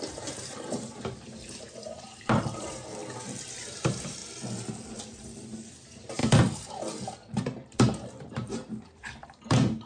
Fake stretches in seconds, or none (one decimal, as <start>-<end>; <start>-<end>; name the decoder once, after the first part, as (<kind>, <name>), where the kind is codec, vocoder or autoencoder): 0.0-3.0 (vocoder, BigVGAN v2); 3.6-4.2; 5.0-6.2; 8.2-9.9